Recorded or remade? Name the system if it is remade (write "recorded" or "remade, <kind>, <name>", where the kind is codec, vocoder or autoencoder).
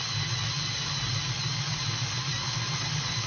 recorded